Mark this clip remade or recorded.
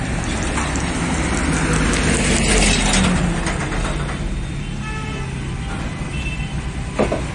recorded